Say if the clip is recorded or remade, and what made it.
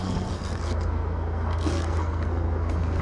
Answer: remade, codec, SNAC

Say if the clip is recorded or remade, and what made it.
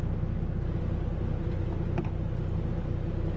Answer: recorded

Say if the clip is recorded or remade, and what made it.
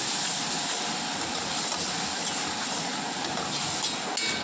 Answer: recorded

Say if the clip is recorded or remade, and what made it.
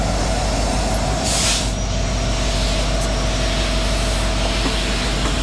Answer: recorded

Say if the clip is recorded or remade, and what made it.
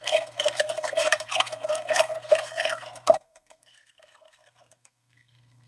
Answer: remade, codec, SNAC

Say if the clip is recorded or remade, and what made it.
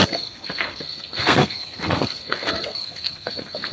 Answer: remade, codec, SNAC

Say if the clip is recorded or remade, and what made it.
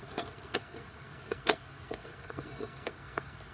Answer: remade, codec, SNAC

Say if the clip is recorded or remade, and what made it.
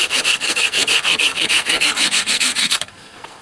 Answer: remade, codec, SNAC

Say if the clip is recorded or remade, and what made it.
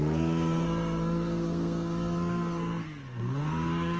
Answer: remade, codec, SNAC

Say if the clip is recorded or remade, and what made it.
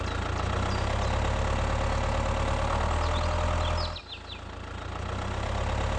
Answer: recorded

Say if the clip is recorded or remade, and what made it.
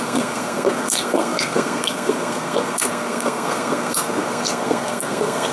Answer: remade, codec, SNAC